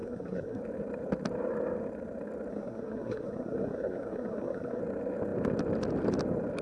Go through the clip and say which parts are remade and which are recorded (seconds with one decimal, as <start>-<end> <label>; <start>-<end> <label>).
0.0-0.6 remade; 0.6-2.5 recorded; 2.5-4.8 remade; 4.8-6.6 recorded